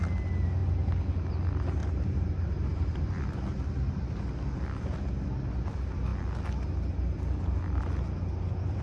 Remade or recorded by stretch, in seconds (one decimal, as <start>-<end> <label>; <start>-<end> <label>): 0.0-1.8 recorded; 1.8-3.2 remade; 3.2-8.8 recorded